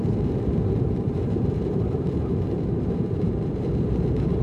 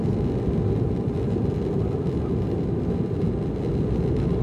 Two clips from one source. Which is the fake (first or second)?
first